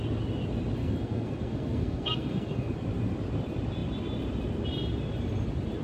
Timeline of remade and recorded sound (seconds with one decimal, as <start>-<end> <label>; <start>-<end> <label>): 0.0-0.8 recorded; 0.8-2.7 remade; 2.7-5.8 recorded